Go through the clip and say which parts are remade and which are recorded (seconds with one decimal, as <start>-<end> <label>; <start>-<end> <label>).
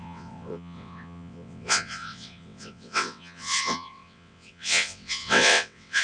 0.0-6.0 remade